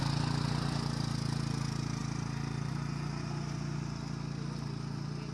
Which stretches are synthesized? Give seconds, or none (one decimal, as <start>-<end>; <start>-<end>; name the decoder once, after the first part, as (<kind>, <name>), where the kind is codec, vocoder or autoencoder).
none